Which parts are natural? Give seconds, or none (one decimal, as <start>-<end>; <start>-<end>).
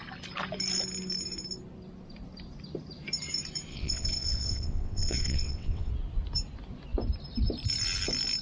0.0-3.7; 5.9-8.4